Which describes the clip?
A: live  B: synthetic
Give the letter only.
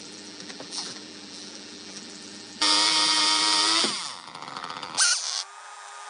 B